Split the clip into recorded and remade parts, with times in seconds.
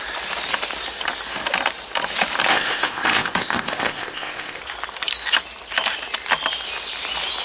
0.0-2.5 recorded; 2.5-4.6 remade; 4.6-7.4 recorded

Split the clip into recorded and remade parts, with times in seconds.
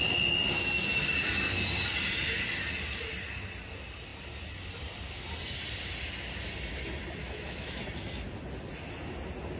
0.0-7.2 recorded; 7.2-7.8 remade; 7.8-9.6 recorded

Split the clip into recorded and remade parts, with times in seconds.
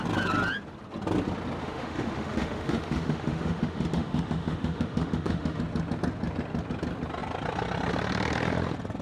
0.0-1.6 recorded; 1.6-5.6 remade; 5.6-9.0 recorded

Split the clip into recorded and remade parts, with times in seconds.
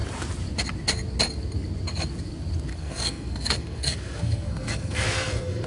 0.0-2.7 recorded; 2.7-5.7 remade